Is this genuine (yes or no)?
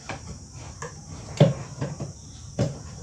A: no